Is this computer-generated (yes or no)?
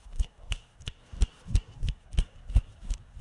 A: yes